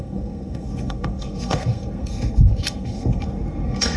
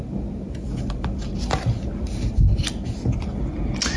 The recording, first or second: second